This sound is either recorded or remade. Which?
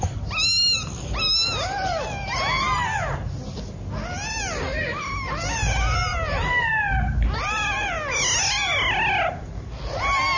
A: recorded